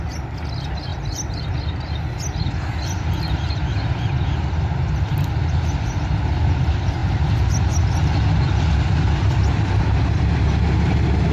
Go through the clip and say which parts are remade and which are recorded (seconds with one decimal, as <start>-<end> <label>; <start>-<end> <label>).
0.0-11.3 recorded